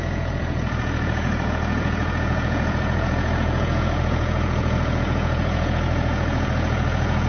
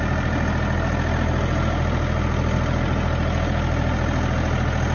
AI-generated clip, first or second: first